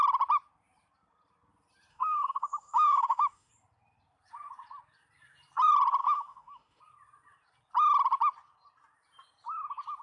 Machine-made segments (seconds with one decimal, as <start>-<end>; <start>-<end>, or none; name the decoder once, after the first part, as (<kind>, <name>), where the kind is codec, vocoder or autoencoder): 1.9-3.5 (autoencoder, DAC-VAE); 6.0-6.8